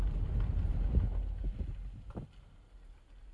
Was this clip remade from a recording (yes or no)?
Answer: no